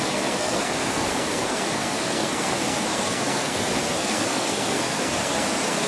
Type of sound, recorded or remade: remade